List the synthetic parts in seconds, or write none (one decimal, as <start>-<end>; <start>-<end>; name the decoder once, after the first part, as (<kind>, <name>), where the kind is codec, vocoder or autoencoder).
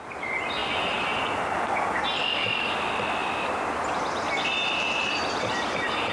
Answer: 3.2-6.1 (vocoder, BigVGAN v2)